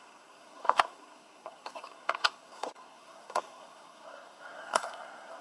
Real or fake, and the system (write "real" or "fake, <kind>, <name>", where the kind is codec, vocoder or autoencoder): fake, codec, SNAC